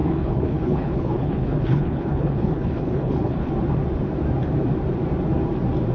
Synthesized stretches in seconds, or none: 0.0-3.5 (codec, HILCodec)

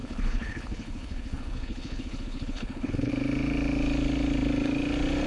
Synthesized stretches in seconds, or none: 0.0-3.1 (codec, HILCodec)

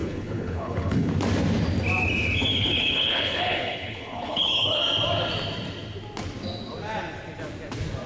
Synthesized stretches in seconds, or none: 0.0-1.1 (codec, HILCodec); 2.5-4.8

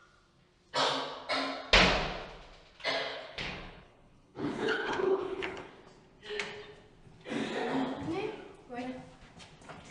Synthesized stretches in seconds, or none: 3.1-5.7 (codec, HILCodec)

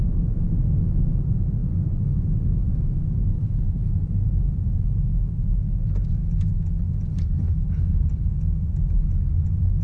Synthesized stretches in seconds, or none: 3.3-3.9 (codec, HILCodec); 7.1-8.3